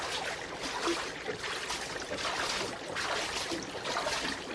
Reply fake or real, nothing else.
real